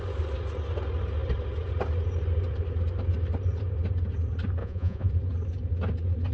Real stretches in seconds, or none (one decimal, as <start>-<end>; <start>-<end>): 0.0-4.6; 5.1-6.3